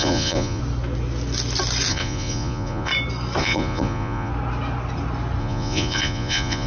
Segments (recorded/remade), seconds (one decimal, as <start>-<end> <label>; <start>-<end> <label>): 0.0-0.6 remade; 0.6-1.9 recorded; 1.9-2.9 remade; 2.9-3.4 recorded; 3.4-4.3 remade; 4.3-5.4 recorded; 5.4-6.7 remade

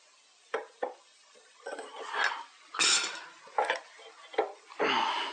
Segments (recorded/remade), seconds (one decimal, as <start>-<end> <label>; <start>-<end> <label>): 0.0-1.1 recorded; 1.1-2.1 remade; 2.1-5.3 recorded

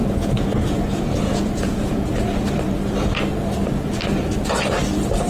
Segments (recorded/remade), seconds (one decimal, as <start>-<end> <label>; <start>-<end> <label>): 0.0-2.1 remade; 2.1-5.3 recorded

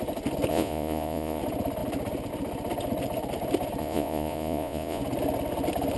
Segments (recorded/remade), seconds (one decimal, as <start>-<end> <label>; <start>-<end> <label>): 0.0-0.5 recorded; 0.5-1.4 remade; 1.4-3.8 recorded; 3.8-5.0 remade; 5.0-6.0 recorded

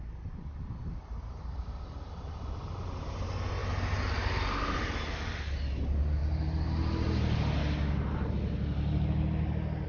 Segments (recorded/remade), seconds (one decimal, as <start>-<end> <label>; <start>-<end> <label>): 0.0-9.9 recorded